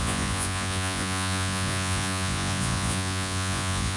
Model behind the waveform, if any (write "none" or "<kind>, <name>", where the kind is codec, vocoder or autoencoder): vocoder, Vocos